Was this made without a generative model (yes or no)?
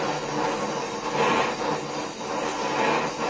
yes